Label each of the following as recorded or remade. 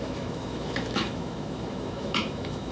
remade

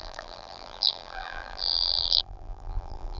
remade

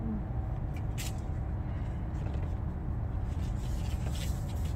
recorded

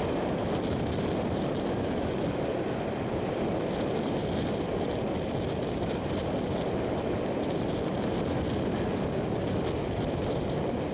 recorded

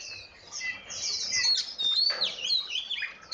recorded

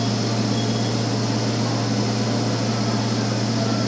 recorded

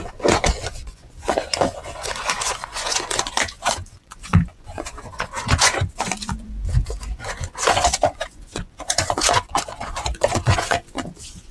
remade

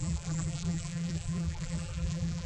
remade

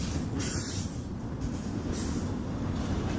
recorded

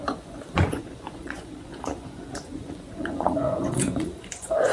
remade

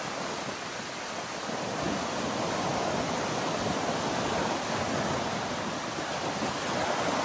recorded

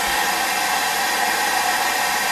recorded